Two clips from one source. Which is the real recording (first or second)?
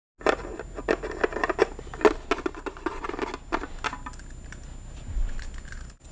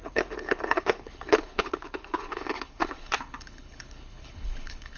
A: first